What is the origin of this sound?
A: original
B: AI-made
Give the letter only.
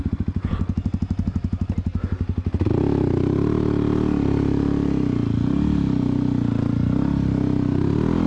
A